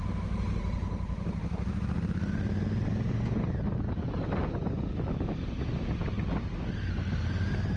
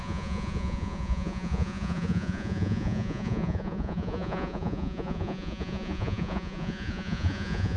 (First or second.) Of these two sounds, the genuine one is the first